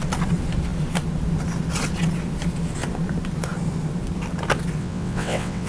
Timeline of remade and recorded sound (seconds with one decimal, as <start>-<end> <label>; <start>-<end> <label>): 0.0-4.8 recorded; 4.8-5.7 remade